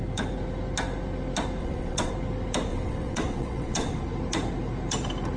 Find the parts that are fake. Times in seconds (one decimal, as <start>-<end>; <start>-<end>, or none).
1.6-2.1; 2.7-4.0